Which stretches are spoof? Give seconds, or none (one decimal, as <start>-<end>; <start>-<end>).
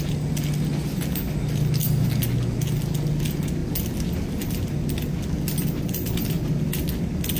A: none